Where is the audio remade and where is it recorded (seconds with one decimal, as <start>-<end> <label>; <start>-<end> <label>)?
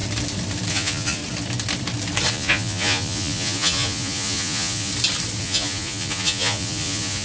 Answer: 0.0-0.7 recorded; 0.7-1.2 remade; 1.2-2.3 recorded; 2.3-4.9 remade; 4.9-5.4 recorded; 5.4-7.2 remade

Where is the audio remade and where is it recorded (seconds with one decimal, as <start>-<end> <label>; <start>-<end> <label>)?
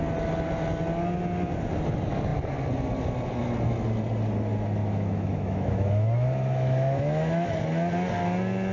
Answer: 0.0-4.8 recorded; 4.8-7.5 remade; 7.5-8.7 recorded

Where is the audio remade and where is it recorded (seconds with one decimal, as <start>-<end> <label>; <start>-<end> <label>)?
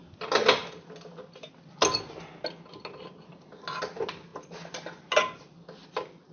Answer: 0.0-6.3 recorded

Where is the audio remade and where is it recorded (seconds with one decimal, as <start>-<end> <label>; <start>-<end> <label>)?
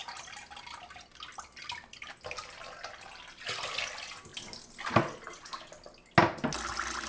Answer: 0.0-7.1 recorded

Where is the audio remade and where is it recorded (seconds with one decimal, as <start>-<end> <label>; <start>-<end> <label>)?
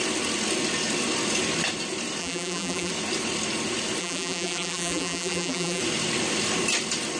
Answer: 0.0-2.2 recorded; 2.2-2.9 remade; 2.9-4.0 recorded; 4.0-5.8 remade; 5.8-7.2 recorded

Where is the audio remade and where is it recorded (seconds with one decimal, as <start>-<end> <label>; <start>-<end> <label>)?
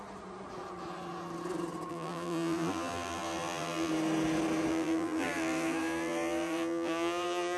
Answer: 0.0-1.9 recorded; 1.9-3.9 remade; 3.9-4.7 recorded; 4.7-7.6 remade